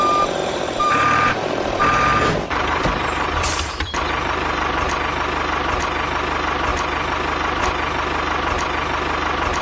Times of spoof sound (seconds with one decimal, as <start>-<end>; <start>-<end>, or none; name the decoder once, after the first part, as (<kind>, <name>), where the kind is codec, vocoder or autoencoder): 0.4-5.0 (vocoder, BigVGAN v2)